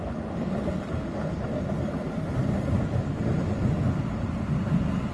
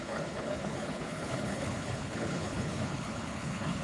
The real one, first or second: first